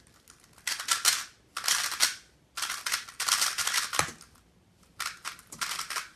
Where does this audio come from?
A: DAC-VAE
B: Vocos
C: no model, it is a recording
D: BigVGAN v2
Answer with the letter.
C